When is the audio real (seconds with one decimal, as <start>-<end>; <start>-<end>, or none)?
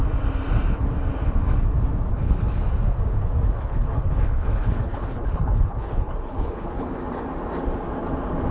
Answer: 0.0-2.1; 2.6-3.6; 6.9-8.5